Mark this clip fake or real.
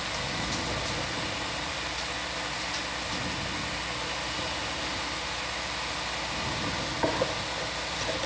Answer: real